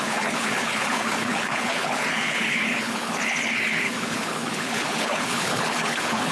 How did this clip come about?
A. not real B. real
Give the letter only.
A